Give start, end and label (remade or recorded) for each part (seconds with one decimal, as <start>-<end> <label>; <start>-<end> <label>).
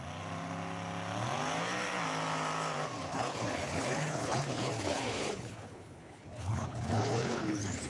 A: 0.0-3.1 recorded; 3.1-7.9 remade